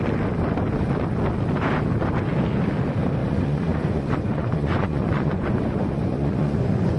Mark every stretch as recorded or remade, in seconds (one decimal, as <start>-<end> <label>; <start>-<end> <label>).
0.0-3.2 recorded; 3.2-7.0 remade